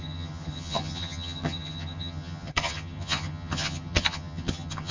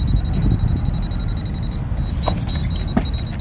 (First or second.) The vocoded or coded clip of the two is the first